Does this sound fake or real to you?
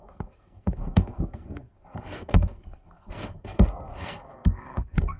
fake